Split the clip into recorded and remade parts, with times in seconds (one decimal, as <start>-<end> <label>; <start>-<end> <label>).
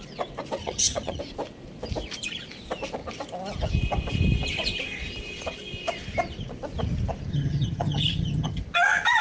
0.0-0.6 recorded; 0.6-1.2 remade; 1.2-7.3 recorded; 7.3-8.6 remade; 8.6-9.2 recorded